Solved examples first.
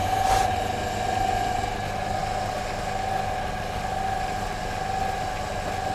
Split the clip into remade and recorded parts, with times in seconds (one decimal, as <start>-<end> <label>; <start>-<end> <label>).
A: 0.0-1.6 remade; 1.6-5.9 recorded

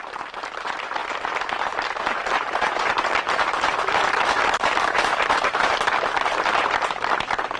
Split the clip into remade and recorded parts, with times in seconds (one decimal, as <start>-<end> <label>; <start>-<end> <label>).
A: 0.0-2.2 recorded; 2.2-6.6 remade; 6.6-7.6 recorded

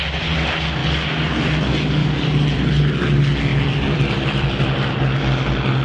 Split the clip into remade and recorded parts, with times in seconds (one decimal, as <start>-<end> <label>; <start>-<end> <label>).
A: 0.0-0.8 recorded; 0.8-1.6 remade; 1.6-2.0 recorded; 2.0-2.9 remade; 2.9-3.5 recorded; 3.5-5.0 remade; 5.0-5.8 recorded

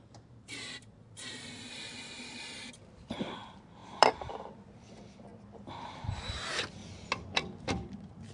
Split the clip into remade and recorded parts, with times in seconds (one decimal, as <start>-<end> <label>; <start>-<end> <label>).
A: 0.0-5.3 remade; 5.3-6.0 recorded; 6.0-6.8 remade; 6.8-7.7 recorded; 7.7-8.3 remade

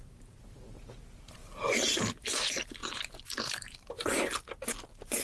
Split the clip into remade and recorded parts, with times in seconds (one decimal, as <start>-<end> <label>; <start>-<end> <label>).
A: 0.0-1.4 recorded; 1.4-2.1 remade; 2.1-2.8 recorded; 2.8-4.2 remade; 4.2-5.2 recorded

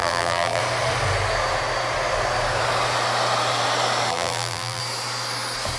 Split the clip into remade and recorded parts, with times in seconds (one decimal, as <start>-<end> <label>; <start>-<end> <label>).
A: 0.0-0.6 remade; 0.6-4.1 recorded; 4.1-4.8 remade; 4.8-5.8 recorded